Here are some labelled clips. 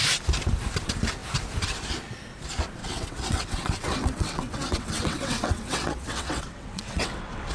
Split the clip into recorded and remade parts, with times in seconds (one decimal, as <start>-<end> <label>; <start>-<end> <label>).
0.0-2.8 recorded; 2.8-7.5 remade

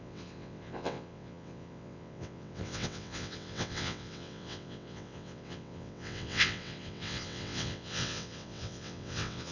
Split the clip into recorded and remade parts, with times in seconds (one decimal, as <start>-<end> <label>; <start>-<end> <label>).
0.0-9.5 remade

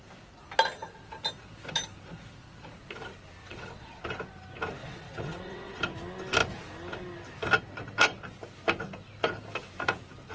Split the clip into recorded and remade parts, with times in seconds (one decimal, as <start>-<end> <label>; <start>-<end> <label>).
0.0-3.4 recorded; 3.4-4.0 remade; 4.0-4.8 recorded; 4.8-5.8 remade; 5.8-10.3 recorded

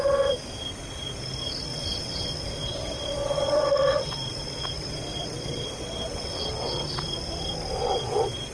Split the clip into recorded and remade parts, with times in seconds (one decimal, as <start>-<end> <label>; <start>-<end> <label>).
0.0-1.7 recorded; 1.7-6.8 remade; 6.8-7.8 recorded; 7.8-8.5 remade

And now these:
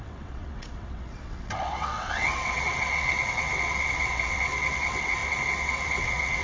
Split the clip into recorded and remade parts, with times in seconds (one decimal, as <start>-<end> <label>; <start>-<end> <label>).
0.0-6.4 remade